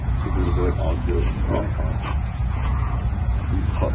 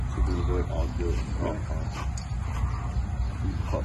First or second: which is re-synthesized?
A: first